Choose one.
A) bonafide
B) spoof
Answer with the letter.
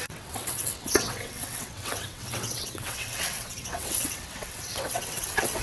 B